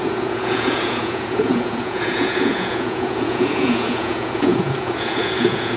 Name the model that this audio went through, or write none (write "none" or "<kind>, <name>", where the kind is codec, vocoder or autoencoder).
vocoder, Vocos